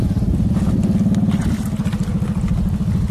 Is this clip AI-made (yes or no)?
no